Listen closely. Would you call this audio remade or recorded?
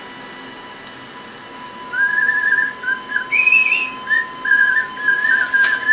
recorded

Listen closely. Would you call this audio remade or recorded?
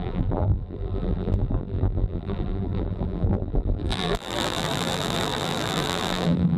remade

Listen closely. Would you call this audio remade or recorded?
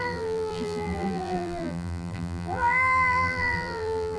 remade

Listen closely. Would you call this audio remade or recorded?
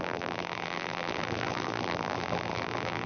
remade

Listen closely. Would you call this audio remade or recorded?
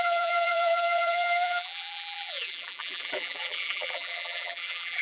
remade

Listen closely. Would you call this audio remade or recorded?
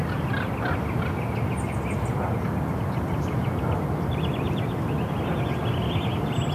recorded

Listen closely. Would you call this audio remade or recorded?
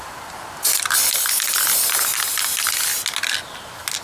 recorded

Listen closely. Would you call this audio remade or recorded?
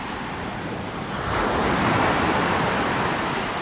remade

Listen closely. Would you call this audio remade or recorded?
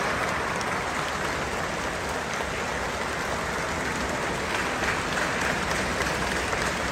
recorded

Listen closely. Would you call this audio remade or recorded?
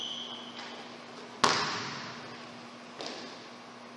recorded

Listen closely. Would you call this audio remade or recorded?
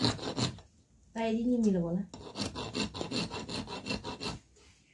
recorded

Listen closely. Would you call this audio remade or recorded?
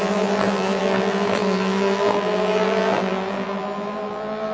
remade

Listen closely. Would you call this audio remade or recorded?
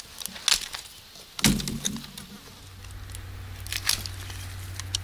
recorded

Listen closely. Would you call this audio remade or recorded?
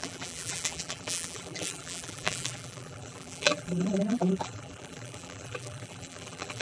remade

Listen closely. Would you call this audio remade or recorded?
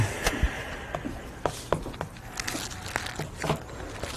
recorded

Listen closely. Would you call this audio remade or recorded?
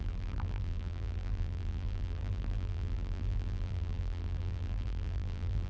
remade